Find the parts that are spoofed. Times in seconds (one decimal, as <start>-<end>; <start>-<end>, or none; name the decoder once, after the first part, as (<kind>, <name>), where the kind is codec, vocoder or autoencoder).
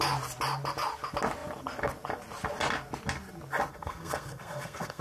3.7-5.0 (codec, SNAC)